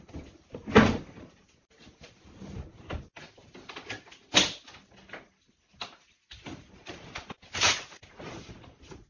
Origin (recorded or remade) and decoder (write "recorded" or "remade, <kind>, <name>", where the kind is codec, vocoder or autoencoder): recorded